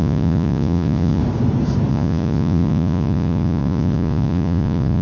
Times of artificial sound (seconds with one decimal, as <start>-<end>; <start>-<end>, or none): 0.0-1.2; 1.9-5.0